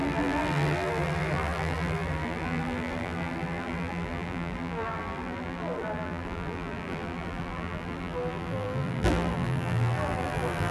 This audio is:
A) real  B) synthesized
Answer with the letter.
B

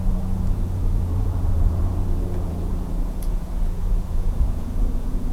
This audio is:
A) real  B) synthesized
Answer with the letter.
B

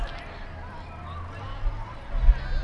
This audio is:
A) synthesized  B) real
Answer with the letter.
B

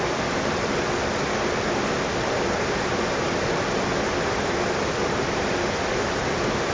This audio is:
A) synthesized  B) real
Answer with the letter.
B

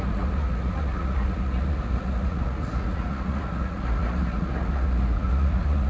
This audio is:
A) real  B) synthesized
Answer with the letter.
B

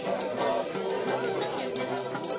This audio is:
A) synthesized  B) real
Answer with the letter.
B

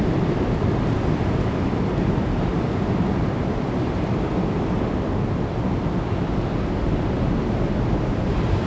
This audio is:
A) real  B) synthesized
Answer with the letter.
A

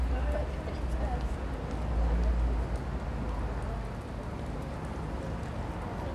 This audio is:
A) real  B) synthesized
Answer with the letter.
A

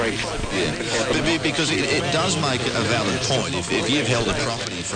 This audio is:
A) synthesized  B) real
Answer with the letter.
B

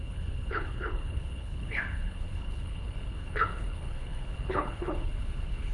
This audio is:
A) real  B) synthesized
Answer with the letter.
B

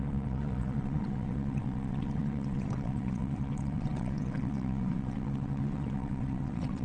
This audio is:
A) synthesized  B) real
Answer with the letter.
A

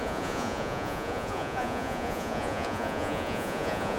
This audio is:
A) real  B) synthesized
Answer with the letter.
B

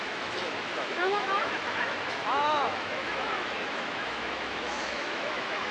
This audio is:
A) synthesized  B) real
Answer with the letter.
A